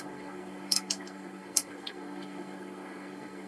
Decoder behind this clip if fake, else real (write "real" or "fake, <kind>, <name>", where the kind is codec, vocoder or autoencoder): fake, codec, SNAC